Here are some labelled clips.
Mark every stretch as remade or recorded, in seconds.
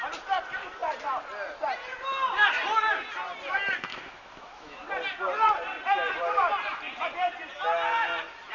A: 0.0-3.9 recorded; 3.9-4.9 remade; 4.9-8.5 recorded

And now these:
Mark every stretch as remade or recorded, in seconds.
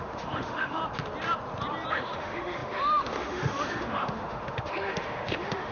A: 0.0-0.8 remade; 0.8-1.9 recorded; 1.9-5.7 remade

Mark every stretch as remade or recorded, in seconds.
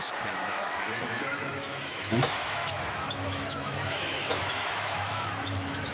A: 0.0-5.9 remade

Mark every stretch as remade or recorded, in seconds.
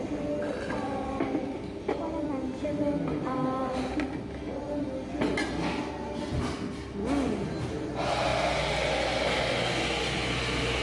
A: 0.0-10.8 recorded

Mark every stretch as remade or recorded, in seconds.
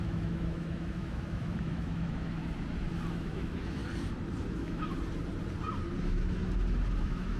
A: 0.0-2.4 remade; 2.4-3.1 recorded; 3.1-3.8 remade; 3.8-4.5 recorded; 4.5-4.9 remade; 4.9-6.0 recorded; 6.0-6.4 remade; 6.4-7.0 recorded; 7.0-7.4 remade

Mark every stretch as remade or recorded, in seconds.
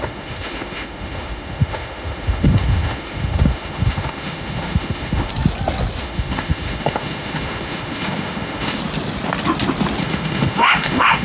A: 0.0-5.3 remade; 5.3-6.0 recorded; 6.0-8.8 remade; 8.8-10.0 recorded; 10.0-11.2 remade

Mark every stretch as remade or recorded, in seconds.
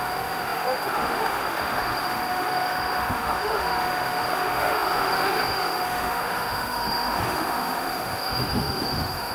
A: 0.0-9.3 remade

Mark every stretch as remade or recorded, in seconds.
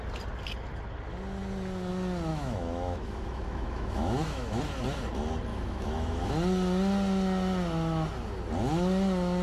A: 0.0-2.3 recorded; 2.3-4.6 remade; 4.6-5.5 recorded; 5.5-6.3 remade; 6.3-9.4 recorded